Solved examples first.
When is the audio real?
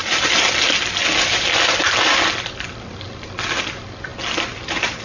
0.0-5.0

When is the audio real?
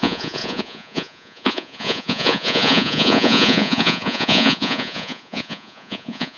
none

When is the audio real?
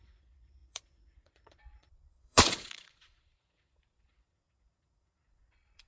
none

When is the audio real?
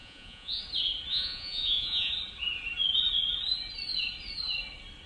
0.6-1.1; 2.1-5.1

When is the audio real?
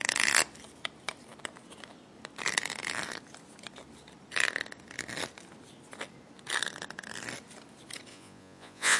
0.0-8.1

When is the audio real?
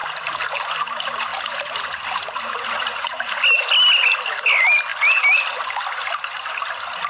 0.0-1.3; 3.4-7.1